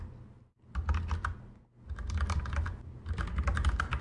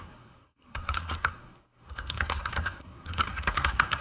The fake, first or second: second